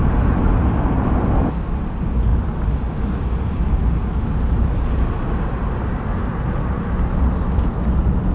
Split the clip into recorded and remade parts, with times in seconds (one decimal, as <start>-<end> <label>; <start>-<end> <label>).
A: 0.0-8.3 recorded